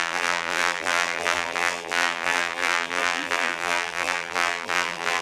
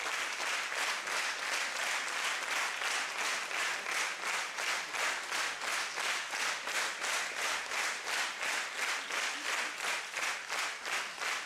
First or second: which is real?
second